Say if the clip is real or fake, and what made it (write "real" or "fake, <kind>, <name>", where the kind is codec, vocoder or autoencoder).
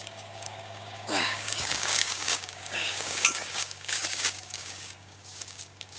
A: fake, codec, DAC